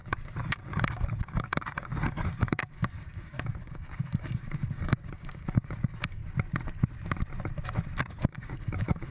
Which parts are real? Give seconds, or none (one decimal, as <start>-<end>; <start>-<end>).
6.2-8.0